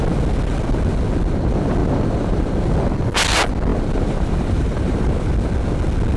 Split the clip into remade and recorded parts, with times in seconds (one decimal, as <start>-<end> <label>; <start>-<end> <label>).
0.0-1.8 recorded; 1.8-2.5 remade; 2.5-3.7 recorded; 3.7-5.3 remade; 5.3-6.2 recorded